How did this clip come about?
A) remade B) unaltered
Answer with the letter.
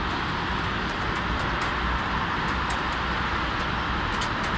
B